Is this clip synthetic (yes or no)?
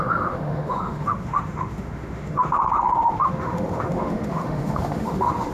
yes